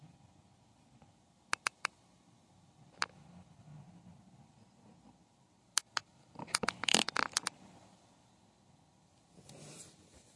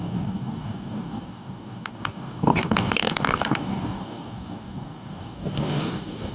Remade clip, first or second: second